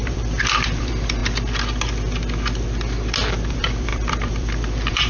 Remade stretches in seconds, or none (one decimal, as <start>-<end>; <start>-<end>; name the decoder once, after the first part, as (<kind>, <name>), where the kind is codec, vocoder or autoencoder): 0.0-1.2 (vocoder, BigVGAN v2); 3.5-5.1